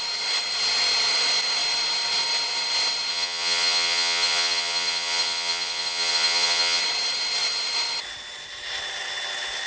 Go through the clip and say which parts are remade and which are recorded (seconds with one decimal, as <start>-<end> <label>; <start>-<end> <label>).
0.0-3.1 recorded; 3.1-6.8 remade; 6.8-9.7 recorded